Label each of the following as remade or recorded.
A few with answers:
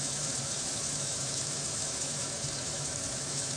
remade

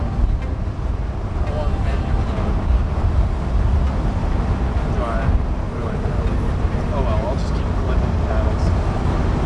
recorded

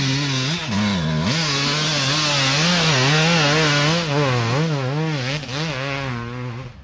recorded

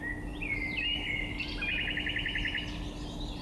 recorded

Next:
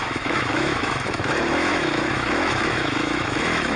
remade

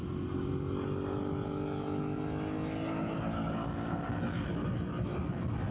recorded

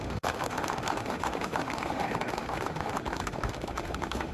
remade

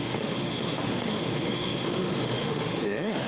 remade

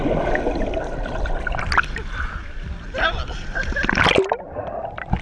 recorded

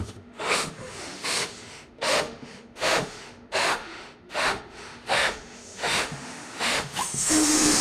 remade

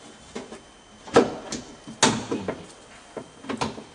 recorded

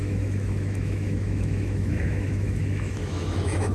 remade